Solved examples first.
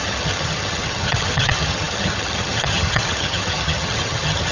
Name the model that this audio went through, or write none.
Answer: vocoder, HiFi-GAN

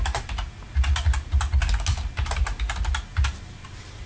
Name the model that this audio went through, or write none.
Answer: none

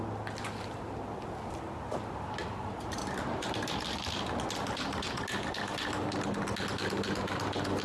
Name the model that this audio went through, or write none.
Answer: none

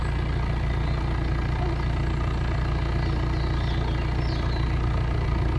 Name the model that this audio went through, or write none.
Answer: none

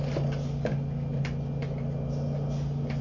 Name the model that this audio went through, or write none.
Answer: none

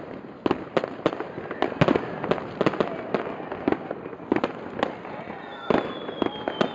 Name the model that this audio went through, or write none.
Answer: none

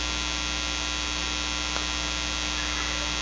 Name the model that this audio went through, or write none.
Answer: none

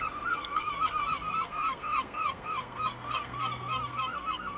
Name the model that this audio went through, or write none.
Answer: codec, SNAC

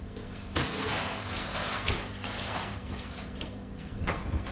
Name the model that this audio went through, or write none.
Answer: codec, SNAC